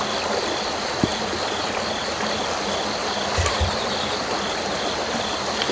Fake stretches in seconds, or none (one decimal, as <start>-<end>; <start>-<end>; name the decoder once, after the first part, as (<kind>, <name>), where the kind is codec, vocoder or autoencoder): none

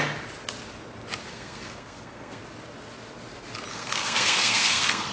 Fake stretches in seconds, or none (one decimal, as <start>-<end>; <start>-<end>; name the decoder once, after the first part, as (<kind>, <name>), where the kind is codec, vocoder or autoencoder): 1.2-2.4 (codec, SNAC); 3.7-5.1

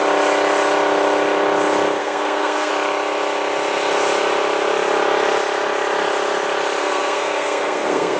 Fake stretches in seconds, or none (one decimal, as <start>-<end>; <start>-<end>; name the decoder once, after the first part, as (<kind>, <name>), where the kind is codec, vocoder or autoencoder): 2.0-2.7 (codec, SNAC); 6.8-8.2